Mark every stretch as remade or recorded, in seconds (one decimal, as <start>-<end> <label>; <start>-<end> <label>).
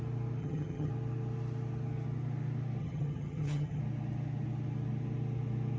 0.0-0.4 recorded; 0.4-0.9 remade; 0.9-2.8 recorded; 2.8-3.8 remade; 3.8-5.8 recorded